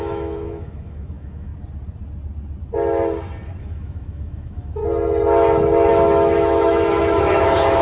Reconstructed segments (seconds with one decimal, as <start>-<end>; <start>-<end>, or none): 0.0-1.5; 3.6-4.8; 5.9-7.8